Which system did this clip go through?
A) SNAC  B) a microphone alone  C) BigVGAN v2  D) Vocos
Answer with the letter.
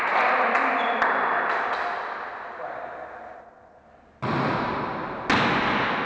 B